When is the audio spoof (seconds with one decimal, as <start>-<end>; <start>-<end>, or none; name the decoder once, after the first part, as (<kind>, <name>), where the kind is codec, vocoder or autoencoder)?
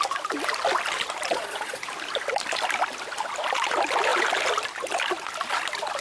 1.3-1.9 (vocoder, Vocos)